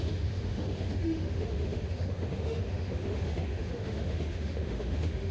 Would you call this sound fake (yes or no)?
yes